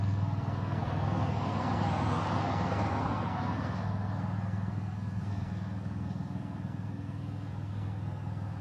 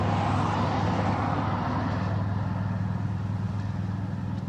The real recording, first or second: second